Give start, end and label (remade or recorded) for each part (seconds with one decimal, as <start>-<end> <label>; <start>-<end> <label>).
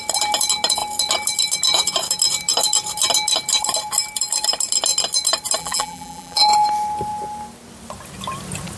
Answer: 0.0-5.6 recorded; 5.6-6.4 remade; 6.4-8.8 recorded